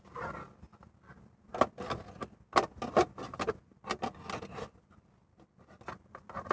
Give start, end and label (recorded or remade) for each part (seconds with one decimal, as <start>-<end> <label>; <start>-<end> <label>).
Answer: 0.0-6.5 recorded